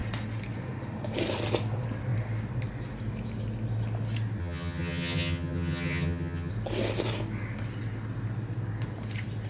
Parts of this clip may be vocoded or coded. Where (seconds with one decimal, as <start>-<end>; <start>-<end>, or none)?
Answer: 4.4-6.5